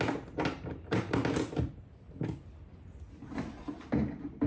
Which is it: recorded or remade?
recorded